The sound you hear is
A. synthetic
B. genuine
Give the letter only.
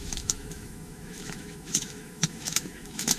A